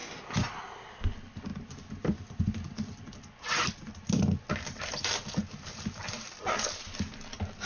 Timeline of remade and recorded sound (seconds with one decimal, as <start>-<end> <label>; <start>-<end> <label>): 0.0-7.7 recorded